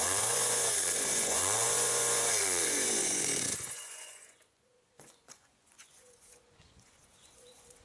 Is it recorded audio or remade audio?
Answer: remade